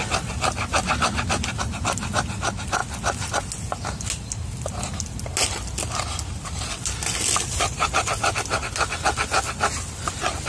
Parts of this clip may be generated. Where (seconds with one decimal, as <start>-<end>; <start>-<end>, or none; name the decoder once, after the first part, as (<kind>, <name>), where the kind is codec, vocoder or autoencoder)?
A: none

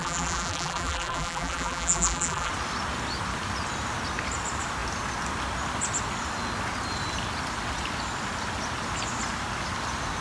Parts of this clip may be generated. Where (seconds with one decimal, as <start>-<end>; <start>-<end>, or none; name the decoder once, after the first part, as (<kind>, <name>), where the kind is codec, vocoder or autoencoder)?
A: 0.0-2.5 (vocoder, BigVGAN v2)